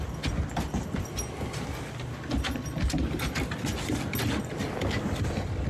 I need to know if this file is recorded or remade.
recorded